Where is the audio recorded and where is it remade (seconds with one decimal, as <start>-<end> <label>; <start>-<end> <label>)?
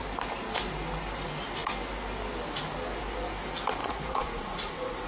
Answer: 0.0-3.8 recorded; 3.8-5.1 remade